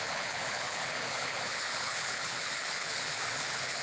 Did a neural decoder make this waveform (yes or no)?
yes